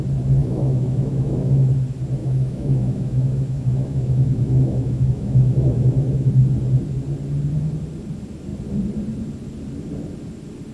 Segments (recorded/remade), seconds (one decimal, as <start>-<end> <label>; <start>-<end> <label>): 0.0-0.4 recorded; 0.4-1.7 remade; 1.7-2.2 recorded; 2.2-6.3 remade; 6.3-10.7 recorded